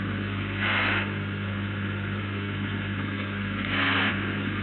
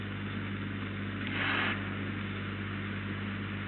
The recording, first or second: second